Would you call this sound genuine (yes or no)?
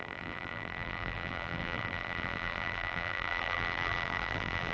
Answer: no